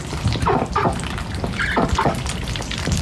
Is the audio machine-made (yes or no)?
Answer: no